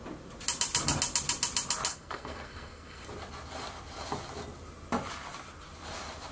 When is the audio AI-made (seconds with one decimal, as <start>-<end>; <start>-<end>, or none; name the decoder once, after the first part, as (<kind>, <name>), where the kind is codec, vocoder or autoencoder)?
1.9-3.1 (codec, SNAC)